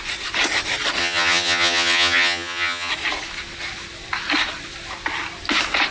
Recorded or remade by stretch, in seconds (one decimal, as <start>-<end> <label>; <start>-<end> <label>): 0.0-1.0 recorded; 1.0-2.9 remade; 2.9-5.9 recorded